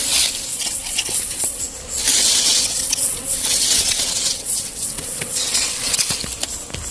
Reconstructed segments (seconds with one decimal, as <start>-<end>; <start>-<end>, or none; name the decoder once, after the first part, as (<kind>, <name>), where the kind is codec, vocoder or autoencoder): 0.5-1.6 (vocoder, WaveNeXt); 2.1-6.2